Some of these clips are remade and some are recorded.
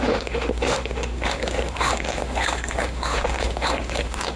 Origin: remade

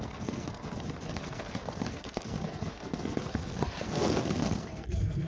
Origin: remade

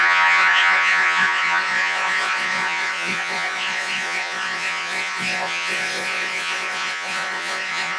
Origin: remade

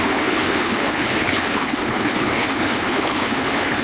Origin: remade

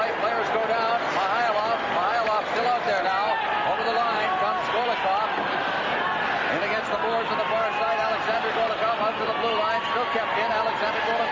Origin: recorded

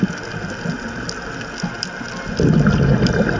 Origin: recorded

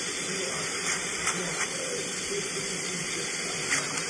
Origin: remade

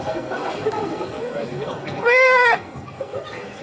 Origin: remade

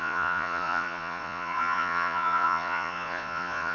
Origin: remade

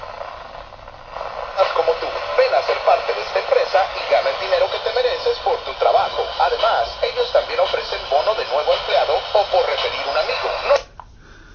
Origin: recorded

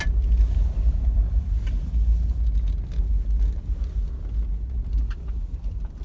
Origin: recorded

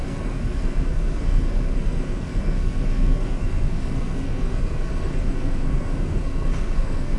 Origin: remade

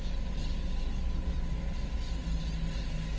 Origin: recorded